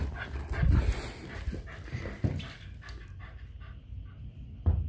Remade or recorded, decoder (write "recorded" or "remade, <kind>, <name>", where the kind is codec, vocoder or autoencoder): recorded